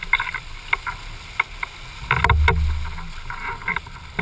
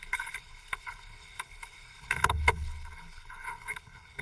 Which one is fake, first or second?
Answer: second